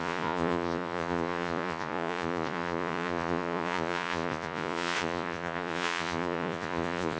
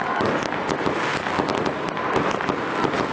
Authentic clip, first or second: second